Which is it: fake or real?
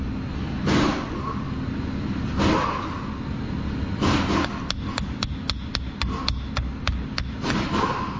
real